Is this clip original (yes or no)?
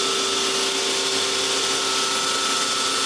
yes